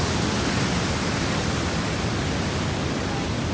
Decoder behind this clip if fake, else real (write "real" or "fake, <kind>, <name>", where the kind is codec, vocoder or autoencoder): real